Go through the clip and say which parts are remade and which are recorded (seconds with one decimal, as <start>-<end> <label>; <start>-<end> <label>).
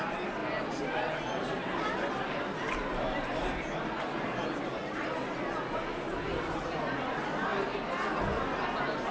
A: 0.0-9.1 recorded